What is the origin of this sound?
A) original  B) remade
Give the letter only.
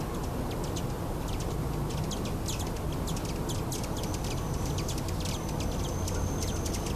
A